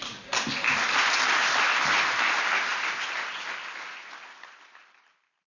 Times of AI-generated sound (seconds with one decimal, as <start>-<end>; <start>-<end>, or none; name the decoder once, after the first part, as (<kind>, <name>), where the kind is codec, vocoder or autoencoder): 2.7-5.5 (vocoder, BigVGAN v2)